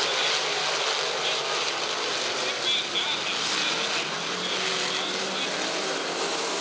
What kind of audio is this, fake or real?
real